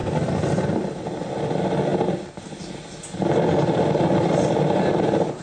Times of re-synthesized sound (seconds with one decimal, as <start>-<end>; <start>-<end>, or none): none